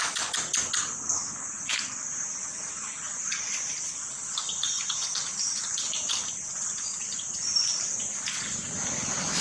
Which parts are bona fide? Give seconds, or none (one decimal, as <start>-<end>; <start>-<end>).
0.0-9.4